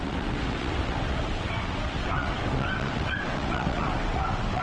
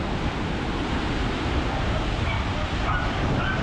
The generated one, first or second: first